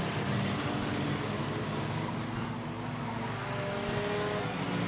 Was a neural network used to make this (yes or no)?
no